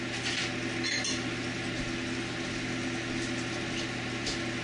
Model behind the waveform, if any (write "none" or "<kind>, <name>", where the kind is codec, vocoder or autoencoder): none